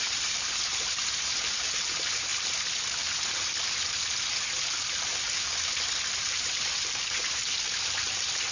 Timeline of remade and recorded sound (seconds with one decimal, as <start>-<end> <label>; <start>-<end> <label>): 0.0-2.3 remade; 2.3-6.2 recorded; 6.2-7.4 remade; 7.4-8.5 recorded